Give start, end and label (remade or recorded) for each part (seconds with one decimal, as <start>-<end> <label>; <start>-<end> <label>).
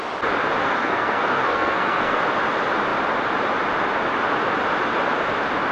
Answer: 0.0-0.6 recorded; 0.6-2.2 remade; 2.2-5.7 recorded